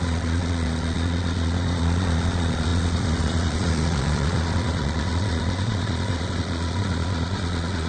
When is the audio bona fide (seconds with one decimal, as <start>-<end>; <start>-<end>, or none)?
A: none